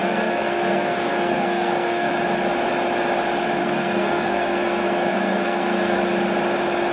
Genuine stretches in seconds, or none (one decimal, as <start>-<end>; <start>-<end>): 2.1-3.6; 6.0-6.9